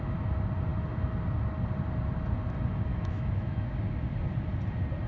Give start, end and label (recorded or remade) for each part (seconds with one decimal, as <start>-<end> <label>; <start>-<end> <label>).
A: 0.0-2.9 recorded; 2.9-3.7 remade; 3.7-5.1 recorded